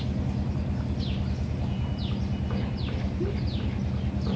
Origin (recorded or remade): recorded